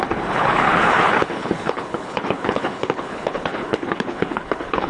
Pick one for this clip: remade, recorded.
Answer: remade